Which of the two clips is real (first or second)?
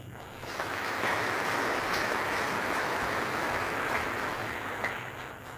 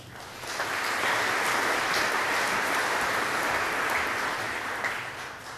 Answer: second